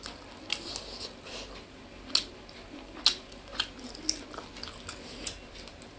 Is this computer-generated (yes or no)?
no